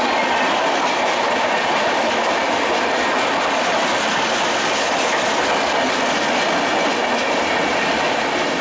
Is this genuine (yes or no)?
yes